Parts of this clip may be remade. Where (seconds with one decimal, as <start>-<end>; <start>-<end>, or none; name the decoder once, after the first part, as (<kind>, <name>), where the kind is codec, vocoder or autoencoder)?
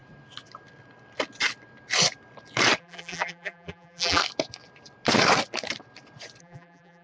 2.8-4.2 (vocoder, BigVGAN v2); 6.4-7.0